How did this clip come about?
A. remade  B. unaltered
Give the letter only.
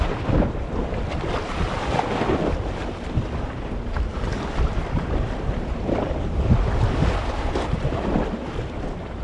A